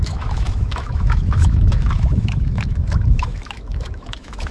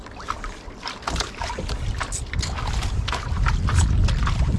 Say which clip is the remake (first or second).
first